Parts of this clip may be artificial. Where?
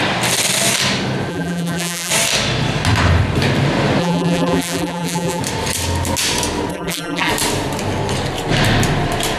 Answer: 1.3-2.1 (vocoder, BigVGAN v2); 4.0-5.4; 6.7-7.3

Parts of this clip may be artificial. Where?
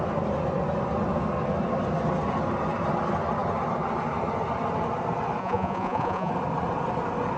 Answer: 5.4-6.3 (vocoder, Vocos)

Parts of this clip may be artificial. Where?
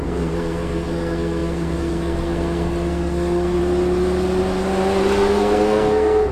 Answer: 0.0-3.6 (codec, SNAC); 5.3-6.3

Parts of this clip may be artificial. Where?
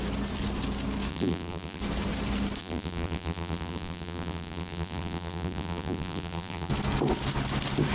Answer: 1.1-1.8 (vocoder, BigVGAN v2); 2.6-6.7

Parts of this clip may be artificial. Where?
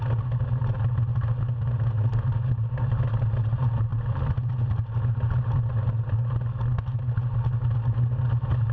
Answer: 3.9-4.5 (vocoder, BigVGAN v2)